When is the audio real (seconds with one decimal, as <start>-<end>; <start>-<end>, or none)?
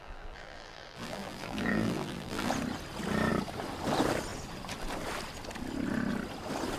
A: 2.5-6.8